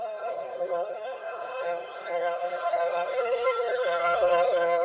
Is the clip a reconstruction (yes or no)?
yes